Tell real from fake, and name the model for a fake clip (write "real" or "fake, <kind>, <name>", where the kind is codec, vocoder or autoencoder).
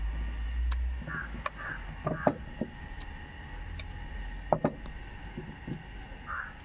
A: real